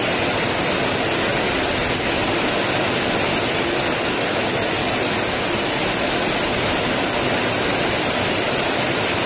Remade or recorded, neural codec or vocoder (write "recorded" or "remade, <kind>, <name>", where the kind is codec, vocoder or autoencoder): recorded